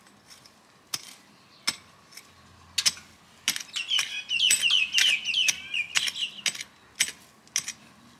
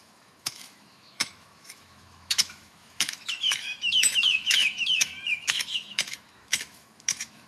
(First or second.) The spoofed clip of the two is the second